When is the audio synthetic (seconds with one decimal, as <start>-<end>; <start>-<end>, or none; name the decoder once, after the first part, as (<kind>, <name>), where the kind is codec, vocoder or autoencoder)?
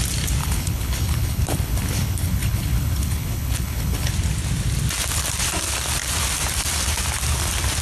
0.4-4.1 (codec, HILCodec)